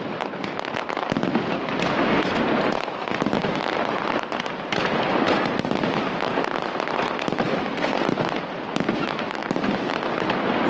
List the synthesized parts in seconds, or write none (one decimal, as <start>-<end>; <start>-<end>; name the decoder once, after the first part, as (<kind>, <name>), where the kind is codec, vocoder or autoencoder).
3.4-5.0 (vocoder, BigVGAN v2); 9.4-10.7